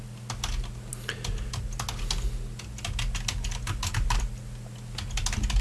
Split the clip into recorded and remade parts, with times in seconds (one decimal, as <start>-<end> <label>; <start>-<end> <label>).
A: 0.0-5.6 recorded